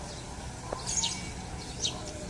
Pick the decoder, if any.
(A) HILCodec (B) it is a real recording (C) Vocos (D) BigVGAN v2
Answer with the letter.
B